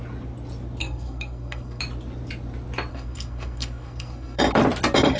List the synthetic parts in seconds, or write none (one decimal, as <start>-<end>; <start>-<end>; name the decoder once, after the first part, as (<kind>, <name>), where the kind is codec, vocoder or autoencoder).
0.8-1.8 (codec, SNAC); 2.9-4.4